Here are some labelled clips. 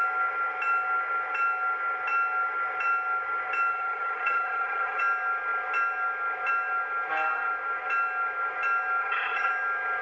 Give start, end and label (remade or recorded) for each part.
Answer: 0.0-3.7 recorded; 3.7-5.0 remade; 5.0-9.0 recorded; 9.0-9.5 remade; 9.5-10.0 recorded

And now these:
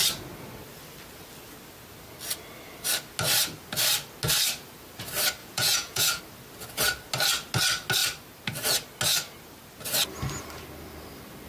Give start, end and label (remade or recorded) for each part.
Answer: 0.0-5.4 recorded; 5.4-6.2 remade; 6.2-11.5 recorded

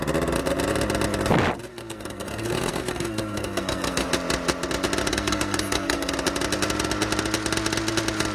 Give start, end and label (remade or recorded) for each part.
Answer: 0.0-1.7 recorded; 1.7-4.1 remade; 4.1-5.1 recorded; 5.1-6.1 remade; 6.1-8.3 recorded

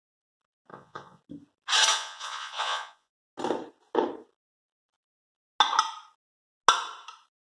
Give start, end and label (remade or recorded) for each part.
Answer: 0.0-0.7 recorded; 0.7-1.2 remade; 1.2-1.9 recorded; 1.9-3.2 remade; 3.2-7.4 recorded

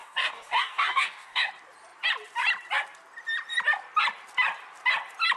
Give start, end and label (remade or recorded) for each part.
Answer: 0.0-1.5 remade; 1.5-5.4 recorded

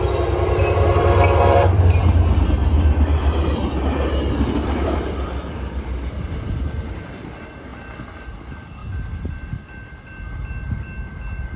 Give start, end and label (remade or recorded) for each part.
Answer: 0.0-7.7 remade; 7.7-8.4 recorded; 8.4-8.8 remade; 8.8-11.6 recorded